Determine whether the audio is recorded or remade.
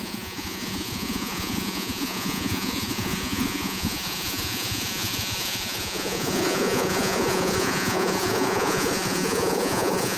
remade